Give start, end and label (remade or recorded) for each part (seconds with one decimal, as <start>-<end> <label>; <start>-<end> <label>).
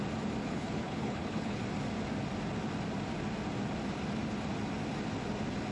0.0-0.4 recorded; 0.4-1.6 remade; 1.6-5.7 recorded